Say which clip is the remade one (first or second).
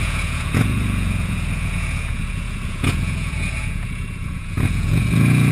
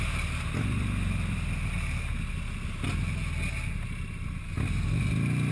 first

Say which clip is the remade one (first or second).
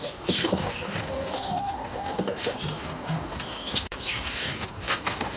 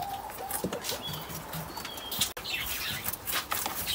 first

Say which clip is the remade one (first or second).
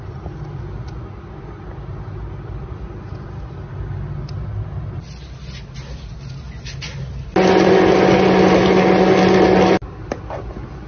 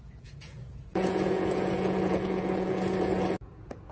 second